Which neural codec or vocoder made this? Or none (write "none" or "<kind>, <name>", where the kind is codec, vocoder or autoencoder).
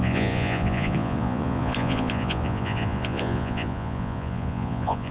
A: vocoder, Vocos